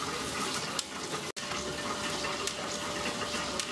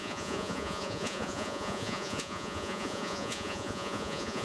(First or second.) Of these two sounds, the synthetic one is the second